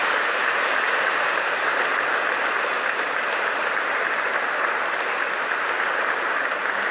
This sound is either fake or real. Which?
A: real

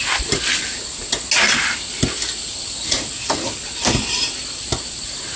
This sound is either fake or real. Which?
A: real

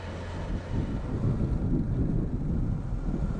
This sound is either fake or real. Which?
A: real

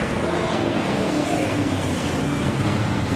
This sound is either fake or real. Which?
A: fake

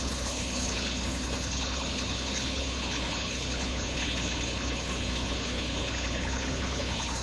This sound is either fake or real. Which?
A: fake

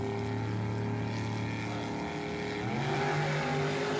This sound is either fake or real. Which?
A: real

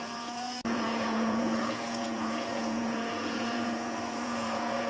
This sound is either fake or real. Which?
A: fake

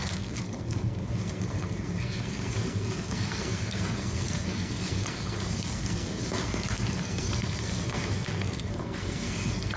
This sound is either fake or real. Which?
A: fake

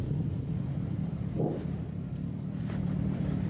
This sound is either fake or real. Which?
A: real